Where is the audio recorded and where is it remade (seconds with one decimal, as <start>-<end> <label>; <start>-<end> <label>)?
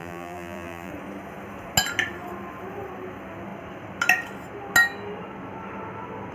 0.0-0.9 remade; 0.9-6.3 recorded